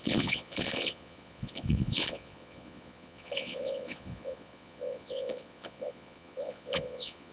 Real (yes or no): no